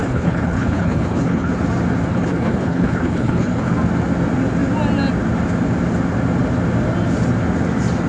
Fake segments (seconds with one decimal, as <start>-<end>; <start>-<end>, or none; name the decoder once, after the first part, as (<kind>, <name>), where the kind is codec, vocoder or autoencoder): 0.0-1.5 (codec, HILCodec); 2.1-3.7